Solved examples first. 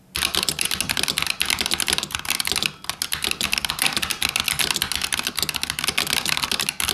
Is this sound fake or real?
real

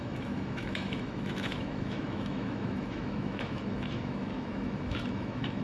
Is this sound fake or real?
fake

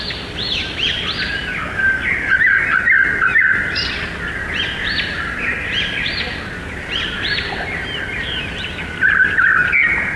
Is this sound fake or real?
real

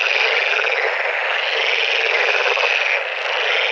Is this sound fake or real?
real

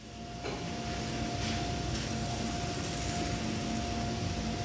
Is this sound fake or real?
real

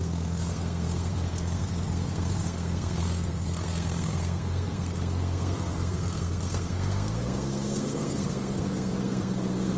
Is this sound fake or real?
fake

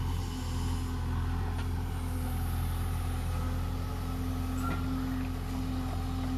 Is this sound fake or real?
real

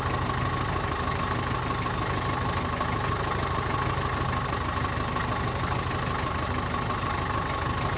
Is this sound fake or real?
real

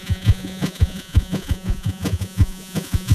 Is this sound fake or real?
fake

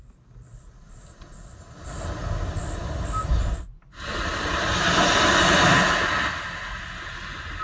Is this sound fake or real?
real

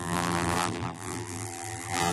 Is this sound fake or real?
fake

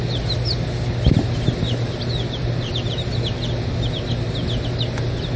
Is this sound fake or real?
real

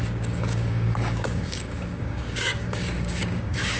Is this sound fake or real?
fake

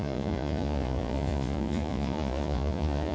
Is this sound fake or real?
fake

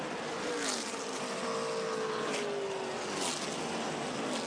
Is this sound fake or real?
real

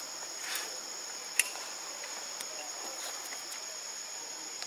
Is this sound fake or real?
real